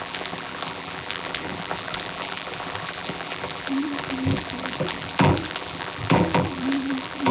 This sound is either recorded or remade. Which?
remade